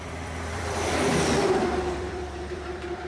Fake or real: fake